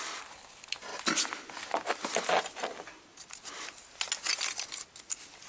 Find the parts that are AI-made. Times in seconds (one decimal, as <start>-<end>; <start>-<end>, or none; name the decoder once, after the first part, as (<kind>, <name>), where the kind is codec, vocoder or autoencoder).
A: none